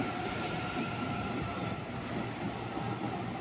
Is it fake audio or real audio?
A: real